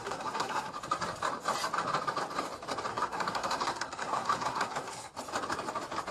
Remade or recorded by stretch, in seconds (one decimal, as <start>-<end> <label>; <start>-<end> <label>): 0.0-0.7 remade; 0.7-2.9 recorded; 2.9-5.1 remade; 5.1-6.1 recorded